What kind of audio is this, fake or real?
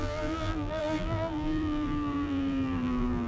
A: fake